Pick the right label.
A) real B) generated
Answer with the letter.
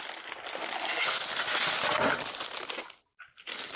A